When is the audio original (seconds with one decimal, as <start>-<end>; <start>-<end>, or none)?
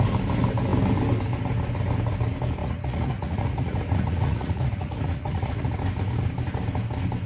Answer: 0.0-2.6; 5.7-7.3